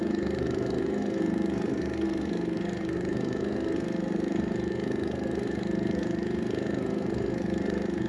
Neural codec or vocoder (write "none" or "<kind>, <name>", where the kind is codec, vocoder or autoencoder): codec, SNAC